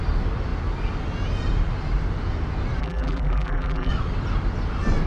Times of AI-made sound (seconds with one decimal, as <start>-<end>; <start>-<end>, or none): 2.8-3.9